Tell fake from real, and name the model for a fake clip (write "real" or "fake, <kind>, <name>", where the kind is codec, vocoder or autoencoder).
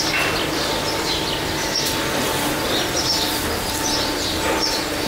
real